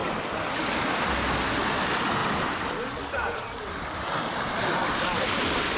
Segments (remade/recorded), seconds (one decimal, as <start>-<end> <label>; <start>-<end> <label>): 0.0-5.8 recorded

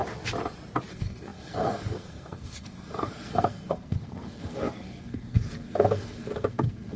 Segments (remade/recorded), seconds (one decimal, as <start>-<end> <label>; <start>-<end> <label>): 0.0-0.9 recorded; 0.9-7.0 remade

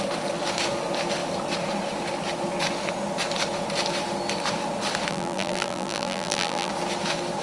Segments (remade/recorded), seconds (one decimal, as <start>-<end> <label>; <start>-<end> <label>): 0.0-5.1 recorded; 5.1-6.7 remade; 6.7-7.4 recorded

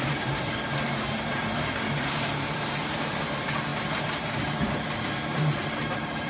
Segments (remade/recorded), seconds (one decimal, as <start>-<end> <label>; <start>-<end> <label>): 0.0-6.3 remade

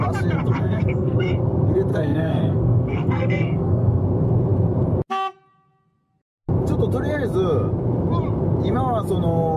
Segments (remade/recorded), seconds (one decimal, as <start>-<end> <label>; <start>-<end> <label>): 0.0-0.4 recorded; 0.4-1.3 remade; 1.3-1.9 recorded; 1.9-4.0 remade; 4.0-9.6 recorded

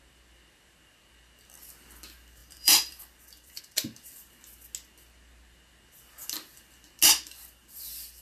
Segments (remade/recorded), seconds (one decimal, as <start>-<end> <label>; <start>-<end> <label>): 0.0-2.4 recorded; 2.4-3.6 remade; 3.6-8.2 recorded